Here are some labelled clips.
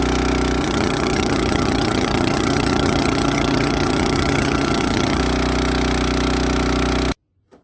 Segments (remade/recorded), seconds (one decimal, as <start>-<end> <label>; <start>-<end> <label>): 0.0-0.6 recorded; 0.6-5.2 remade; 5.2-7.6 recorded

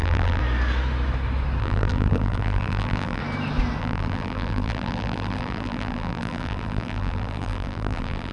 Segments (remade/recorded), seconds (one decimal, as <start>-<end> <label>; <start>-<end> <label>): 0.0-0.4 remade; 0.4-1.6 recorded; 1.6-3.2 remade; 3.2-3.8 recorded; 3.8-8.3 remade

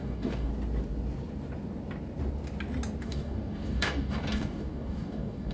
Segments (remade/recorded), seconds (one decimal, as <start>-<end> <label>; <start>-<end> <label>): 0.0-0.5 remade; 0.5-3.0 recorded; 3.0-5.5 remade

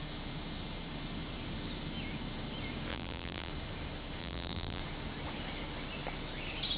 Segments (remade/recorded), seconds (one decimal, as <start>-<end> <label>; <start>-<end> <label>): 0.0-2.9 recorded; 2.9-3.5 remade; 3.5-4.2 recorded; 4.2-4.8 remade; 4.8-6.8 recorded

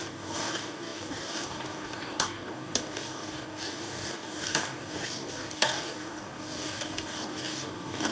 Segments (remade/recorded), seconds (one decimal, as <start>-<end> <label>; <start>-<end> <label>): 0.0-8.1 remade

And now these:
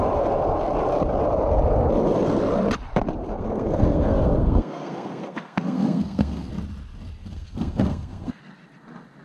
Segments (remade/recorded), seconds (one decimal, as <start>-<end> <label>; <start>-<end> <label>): 0.0-3.2 recorded; 3.2-6.5 remade; 6.5-7.2 recorded; 7.2-8.4 remade; 8.4-9.2 recorded